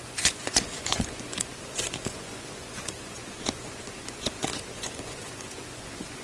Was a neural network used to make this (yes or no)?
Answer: yes